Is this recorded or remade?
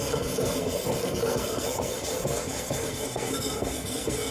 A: remade